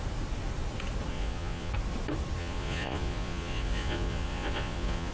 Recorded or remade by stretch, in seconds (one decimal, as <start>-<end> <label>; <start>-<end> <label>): 0.0-1.1 recorded; 1.1-1.7 remade; 1.7-2.4 recorded; 2.4-5.1 remade